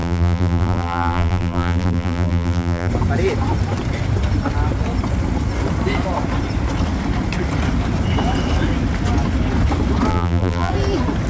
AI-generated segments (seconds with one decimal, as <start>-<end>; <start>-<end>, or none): 0.0-2.9; 10.1-10.7